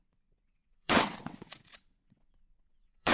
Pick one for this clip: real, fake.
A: fake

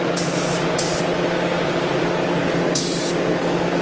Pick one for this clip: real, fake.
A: real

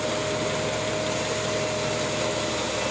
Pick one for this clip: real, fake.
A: real